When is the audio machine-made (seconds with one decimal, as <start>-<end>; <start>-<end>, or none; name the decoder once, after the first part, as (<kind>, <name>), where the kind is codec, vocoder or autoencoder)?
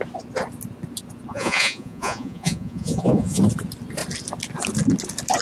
1.3-3.4 (vocoder, Vocos)